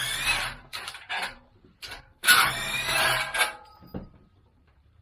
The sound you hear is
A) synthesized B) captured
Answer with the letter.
A